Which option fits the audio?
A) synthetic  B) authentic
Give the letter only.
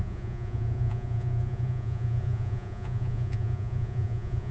A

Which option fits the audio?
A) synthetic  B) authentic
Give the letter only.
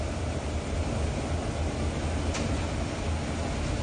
B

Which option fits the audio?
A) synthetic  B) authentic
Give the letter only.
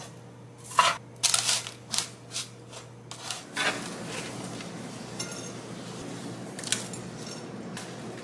B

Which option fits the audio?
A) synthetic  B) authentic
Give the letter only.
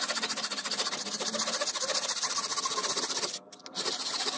B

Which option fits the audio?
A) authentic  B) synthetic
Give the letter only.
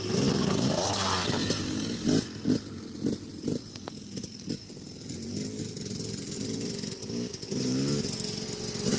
A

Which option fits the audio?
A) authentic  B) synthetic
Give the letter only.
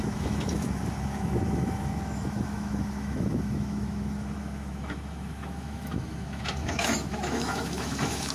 B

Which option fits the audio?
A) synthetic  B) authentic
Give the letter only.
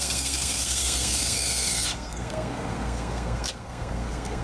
A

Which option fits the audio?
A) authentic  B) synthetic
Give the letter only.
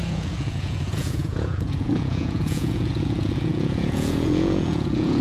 B